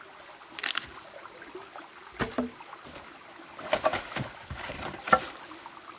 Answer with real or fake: real